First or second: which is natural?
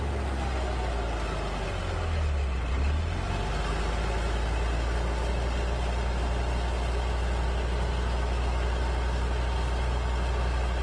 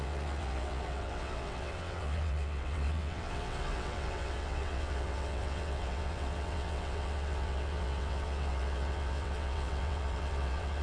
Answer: first